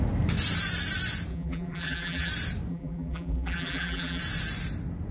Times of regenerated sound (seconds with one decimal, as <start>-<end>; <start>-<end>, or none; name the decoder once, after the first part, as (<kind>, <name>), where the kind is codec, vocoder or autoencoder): 1.3-2.3 (vocoder, BigVGAN v2); 2.7-4.2